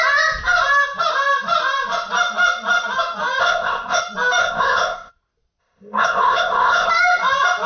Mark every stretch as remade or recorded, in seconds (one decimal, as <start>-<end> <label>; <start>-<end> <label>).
0.0-3.4 recorded; 3.4-4.0 remade; 4.0-4.4 recorded; 4.4-5.1 remade; 5.1-5.6 recorded; 5.6-6.9 remade; 6.9-7.7 recorded